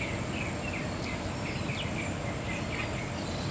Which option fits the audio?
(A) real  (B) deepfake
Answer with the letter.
A